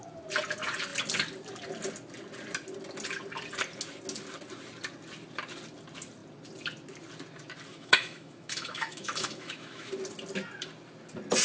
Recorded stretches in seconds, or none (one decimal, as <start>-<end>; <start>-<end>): 0.0-7.7; 9.9-11.4